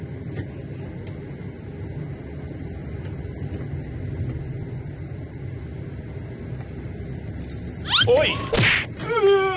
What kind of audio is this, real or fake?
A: real